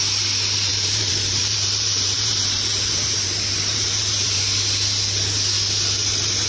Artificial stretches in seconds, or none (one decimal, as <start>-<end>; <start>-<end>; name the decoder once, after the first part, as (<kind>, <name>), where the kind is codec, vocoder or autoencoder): 0.7-4.4 (vocoder, BigVGAN v2)